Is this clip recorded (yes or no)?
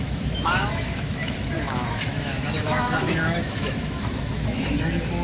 no